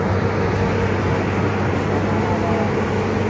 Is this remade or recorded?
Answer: recorded